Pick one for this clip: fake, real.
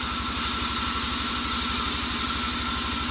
real